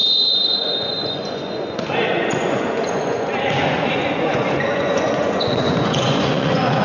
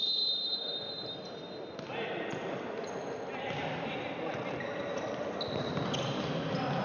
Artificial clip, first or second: first